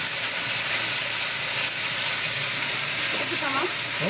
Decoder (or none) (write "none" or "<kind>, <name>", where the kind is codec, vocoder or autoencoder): none